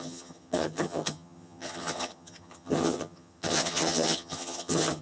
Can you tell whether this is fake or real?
fake